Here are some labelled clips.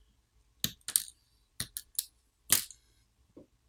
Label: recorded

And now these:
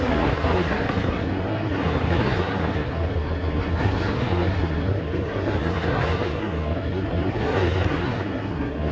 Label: remade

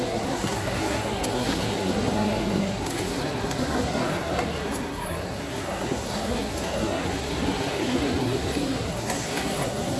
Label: remade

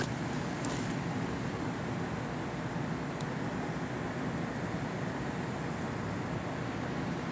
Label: recorded